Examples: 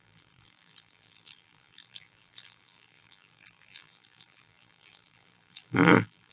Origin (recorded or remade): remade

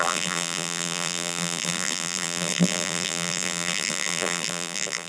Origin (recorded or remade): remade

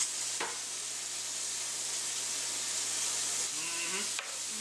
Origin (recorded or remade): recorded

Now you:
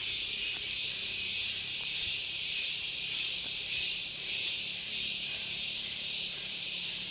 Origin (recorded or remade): remade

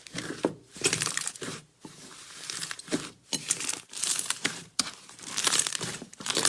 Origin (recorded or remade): remade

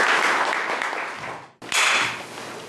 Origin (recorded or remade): recorded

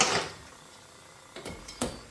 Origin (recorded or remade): remade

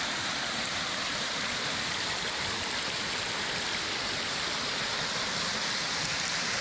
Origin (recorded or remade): remade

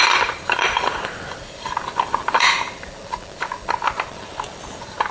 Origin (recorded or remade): remade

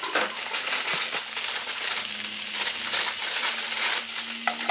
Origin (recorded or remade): recorded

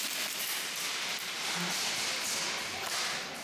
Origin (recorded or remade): recorded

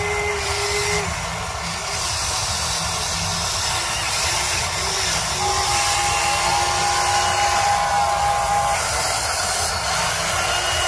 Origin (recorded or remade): recorded